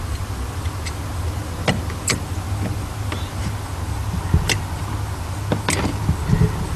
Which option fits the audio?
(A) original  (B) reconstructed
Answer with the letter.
A